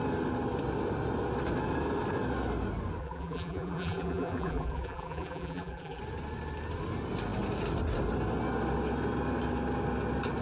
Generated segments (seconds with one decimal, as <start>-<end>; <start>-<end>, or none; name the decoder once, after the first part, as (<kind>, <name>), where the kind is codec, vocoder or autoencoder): 3.0-6.0 (vocoder, BigVGAN v2)